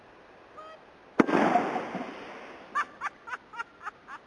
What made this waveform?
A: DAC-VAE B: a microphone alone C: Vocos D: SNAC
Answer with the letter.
B